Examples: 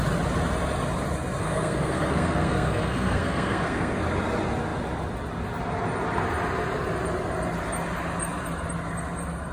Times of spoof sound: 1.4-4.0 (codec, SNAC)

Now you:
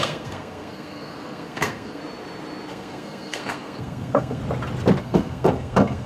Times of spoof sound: 0.0-2.0 (codec, SNAC); 2.7-4.4; 5.0-6.1

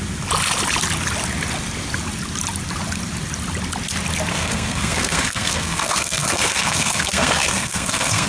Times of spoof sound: 4.3-8.3 (codec, SNAC)

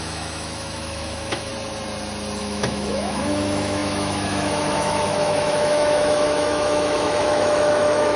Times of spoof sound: 0.0-1.5 (autoencoder, DAC-VAE); 2.4-8.2